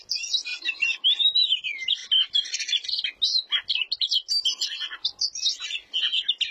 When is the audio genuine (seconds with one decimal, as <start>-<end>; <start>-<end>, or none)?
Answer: 0.0-0.5; 1.6-6.5